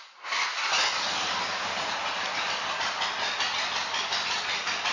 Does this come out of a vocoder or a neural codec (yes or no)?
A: no